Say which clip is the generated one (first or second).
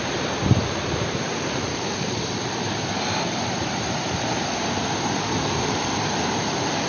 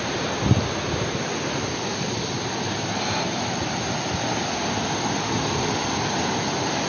first